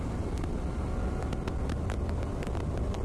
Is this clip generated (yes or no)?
no